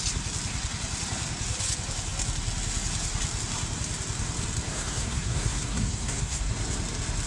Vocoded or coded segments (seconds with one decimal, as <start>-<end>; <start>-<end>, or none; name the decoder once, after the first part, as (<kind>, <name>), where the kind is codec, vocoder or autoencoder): 4.7-6.5 (codec, SNAC)